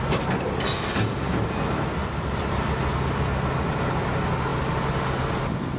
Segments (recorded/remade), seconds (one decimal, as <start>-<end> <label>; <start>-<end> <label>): 0.0-2.0 recorded; 2.0-2.6 remade; 2.6-5.8 recorded

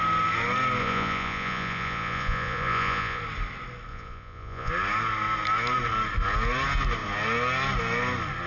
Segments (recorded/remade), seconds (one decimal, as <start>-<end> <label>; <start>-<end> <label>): 0.0-0.8 recorded; 0.8-3.2 remade; 3.2-3.9 recorded; 3.9-4.7 remade; 4.7-8.5 recorded

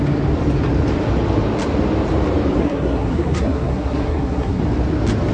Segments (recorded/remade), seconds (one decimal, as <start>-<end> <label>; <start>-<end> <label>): 0.0-2.6 recorded; 2.6-4.6 remade; 4.6-5.3 recorded

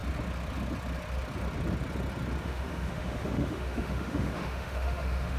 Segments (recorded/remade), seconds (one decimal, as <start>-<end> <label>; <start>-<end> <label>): 0.0-2.4 recorded; 2.4-5.4 remade

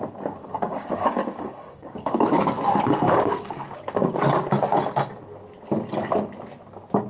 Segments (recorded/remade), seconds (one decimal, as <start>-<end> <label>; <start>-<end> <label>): 0.0-0.4 recorded; 0.4-4.2 remade; 4.2-7.1 recorded

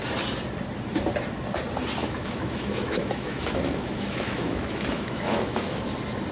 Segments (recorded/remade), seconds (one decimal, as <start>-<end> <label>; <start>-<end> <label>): 0.0-2.0 recorded; 2.0-5.8 remade; 5.8-6.3 recorded